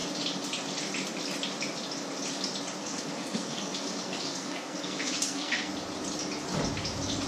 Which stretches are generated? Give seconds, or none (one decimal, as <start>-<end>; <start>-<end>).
2.8-5.7